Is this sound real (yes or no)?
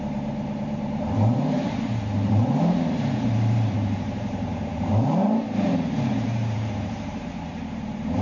no